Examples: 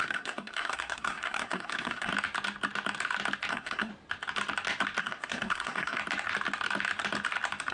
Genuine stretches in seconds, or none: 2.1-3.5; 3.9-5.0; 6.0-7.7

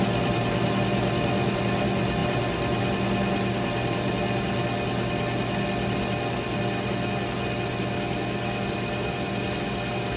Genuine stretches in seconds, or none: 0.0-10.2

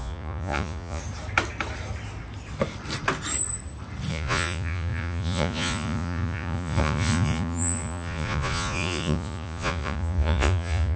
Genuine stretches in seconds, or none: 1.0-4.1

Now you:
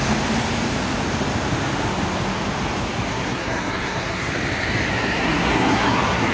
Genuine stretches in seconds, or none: 0.0-3.1; 4.3-4.9

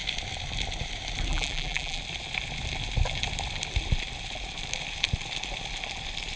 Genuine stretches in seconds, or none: 0.0-1.3; 2.0-6.4

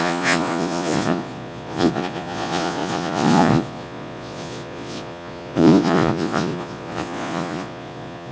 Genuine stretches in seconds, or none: none